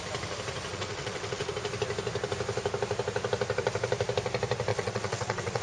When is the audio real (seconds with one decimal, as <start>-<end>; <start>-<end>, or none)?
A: 0.0-0.7; 1.5-4.7